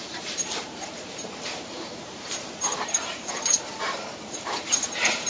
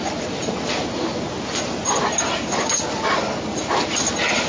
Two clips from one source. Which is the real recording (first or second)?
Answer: second